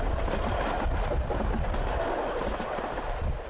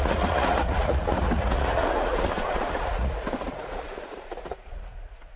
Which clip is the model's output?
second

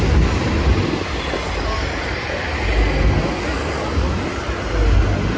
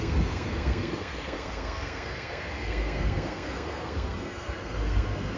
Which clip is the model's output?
second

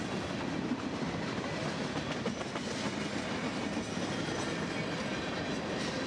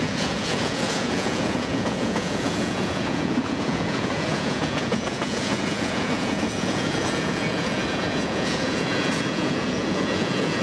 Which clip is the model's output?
second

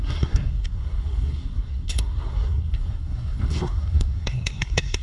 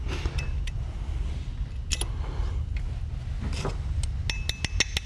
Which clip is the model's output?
first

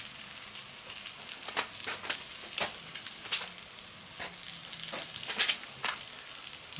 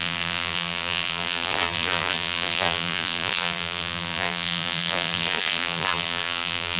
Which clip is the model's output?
second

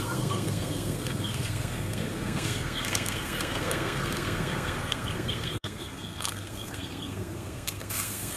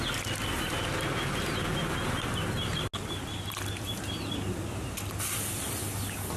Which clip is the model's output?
first